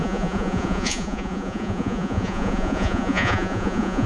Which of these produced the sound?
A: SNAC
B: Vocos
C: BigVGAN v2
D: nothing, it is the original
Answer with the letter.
B